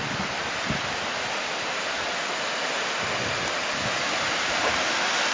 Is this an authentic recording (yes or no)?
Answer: yes